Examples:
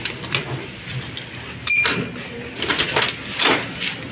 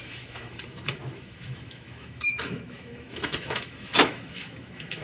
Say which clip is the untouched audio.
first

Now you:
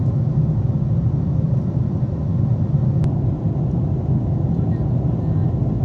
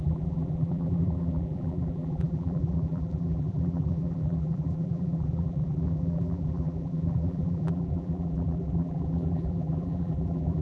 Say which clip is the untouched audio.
first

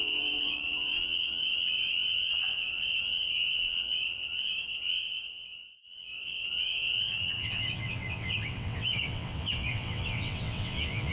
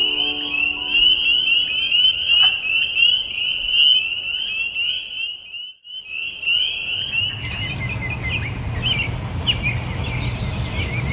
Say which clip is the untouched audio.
second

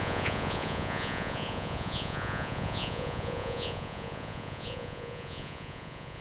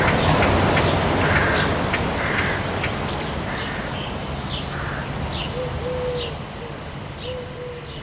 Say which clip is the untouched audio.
second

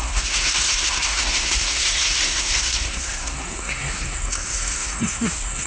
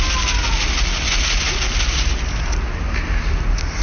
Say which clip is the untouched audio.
second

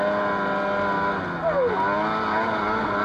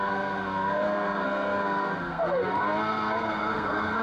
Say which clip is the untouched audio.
first